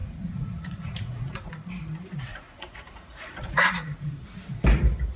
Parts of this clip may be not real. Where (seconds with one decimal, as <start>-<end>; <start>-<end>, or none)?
0.0-1.5; 2.3-4.5